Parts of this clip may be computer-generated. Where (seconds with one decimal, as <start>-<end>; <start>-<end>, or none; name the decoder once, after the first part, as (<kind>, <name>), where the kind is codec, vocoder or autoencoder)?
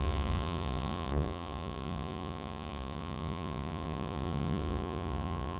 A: 0.0-5.6 (vocoder, Vocos)